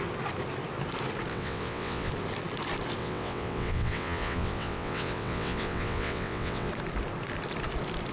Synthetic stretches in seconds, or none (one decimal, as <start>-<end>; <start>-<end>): 1.3-2.1; 3.0-6.7